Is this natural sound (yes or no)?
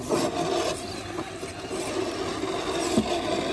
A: yes